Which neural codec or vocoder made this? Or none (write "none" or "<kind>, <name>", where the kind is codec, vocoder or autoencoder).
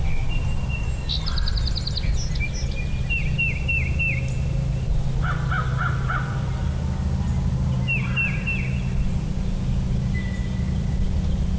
none